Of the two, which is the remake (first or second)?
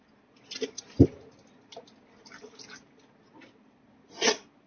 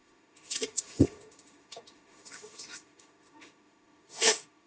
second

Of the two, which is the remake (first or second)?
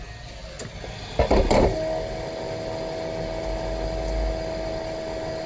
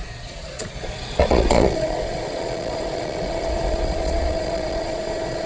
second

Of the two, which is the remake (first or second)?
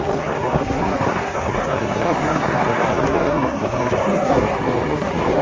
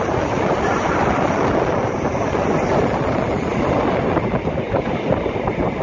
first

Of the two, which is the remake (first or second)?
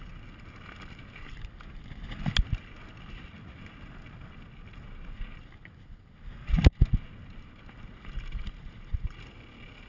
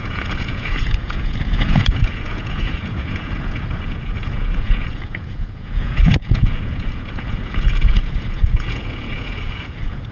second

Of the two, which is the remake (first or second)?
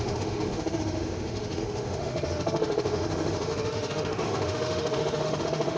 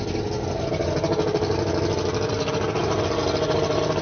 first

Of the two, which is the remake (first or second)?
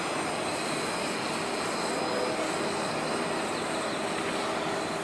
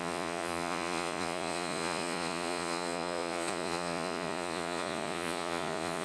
second